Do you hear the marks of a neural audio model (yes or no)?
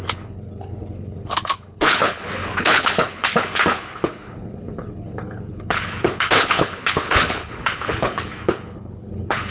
yes